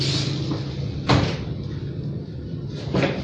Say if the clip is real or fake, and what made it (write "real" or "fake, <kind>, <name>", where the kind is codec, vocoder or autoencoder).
real